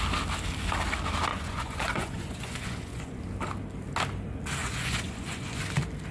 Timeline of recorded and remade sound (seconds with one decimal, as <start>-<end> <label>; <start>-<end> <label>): 0.0-1.3 recorded; 1.3-3.2 remade; 3.2-4.6 recorded; 4.6-5.6 remade; 5.6-6.1 recorded